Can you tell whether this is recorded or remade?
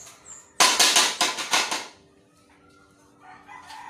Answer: recorded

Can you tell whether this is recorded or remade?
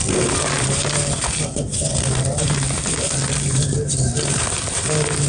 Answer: recorded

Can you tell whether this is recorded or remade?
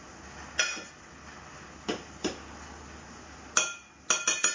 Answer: recorded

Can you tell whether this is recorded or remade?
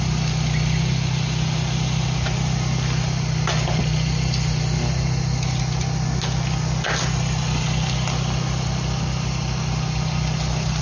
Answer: recorded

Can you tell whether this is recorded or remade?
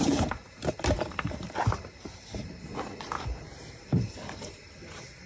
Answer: remade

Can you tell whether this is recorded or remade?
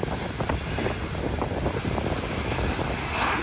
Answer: recorded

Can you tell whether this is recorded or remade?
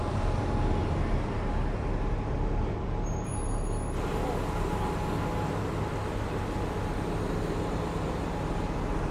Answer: recorded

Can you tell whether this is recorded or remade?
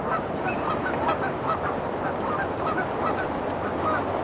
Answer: recorded